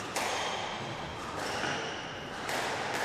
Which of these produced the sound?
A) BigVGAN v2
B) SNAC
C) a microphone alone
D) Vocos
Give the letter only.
C